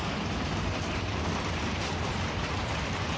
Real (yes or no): no